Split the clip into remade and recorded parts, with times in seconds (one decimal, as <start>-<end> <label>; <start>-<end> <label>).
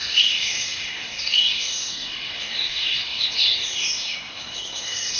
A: 0.0-5.2 remade